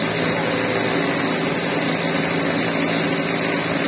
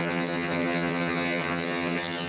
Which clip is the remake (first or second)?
second